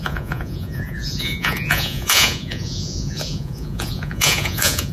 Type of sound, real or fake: fake